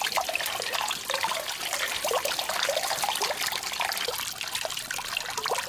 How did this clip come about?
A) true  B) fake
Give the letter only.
A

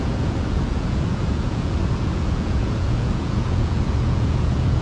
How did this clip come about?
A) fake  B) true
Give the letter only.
A